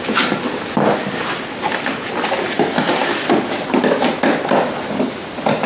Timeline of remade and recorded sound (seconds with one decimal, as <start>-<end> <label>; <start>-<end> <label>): 0.0-5.7 recorded